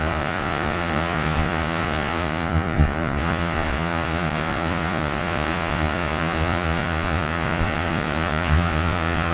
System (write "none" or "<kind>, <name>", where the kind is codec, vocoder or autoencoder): vocoder, Vocos